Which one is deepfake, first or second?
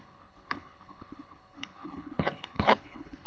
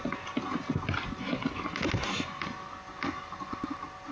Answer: first